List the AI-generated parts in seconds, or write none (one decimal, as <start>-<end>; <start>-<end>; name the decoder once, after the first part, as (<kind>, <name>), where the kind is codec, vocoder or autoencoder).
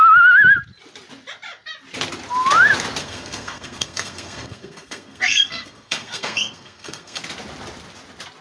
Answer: 3.0-7.2 (codec, SNAC)